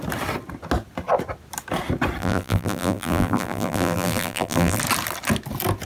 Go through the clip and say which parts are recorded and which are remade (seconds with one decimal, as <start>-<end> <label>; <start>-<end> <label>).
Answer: 0.0-2.2 recorded; 2.2-4.8 remade; 4.8-5.9 recorded